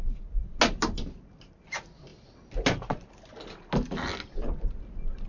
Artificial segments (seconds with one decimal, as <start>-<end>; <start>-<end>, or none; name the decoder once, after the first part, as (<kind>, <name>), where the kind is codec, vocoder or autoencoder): none